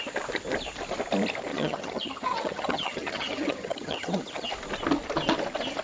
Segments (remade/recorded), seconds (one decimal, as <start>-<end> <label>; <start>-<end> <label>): 0.0-1.5 recorded; 1.5-4.5 remade; 4.5-5.8 recorded